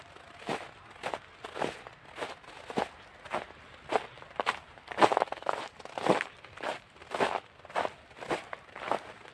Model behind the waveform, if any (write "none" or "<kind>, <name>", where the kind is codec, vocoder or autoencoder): none